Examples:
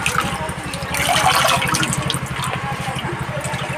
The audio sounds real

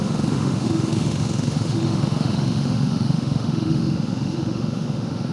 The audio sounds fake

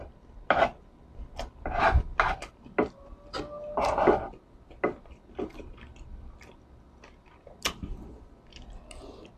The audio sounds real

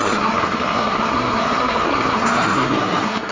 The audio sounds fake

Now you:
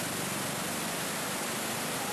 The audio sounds real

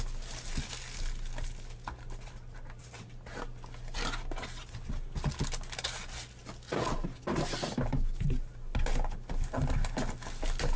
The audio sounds real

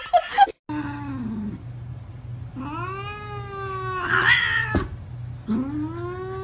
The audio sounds real